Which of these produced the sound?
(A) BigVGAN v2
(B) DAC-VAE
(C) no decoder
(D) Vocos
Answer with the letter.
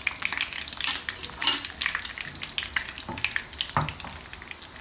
C